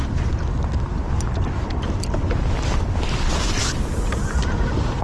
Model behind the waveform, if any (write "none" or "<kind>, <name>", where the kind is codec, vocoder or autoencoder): none